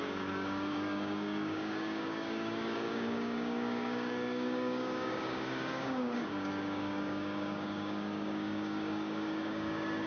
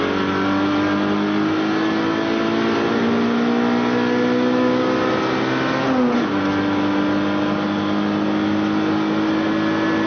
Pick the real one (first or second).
second